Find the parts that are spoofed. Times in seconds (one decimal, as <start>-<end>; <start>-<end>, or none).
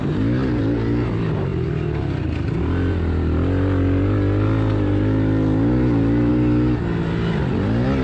none